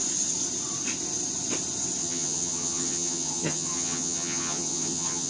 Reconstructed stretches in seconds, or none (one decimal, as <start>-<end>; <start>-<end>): 2.0-5.3